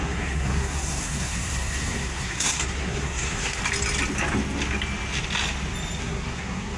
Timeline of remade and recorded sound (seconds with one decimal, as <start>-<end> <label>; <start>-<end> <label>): 0.0-3.6 remade; 3.6-6.0 recorded; 6.0-6.8 remade